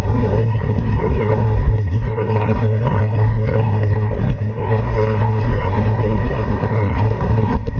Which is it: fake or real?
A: fake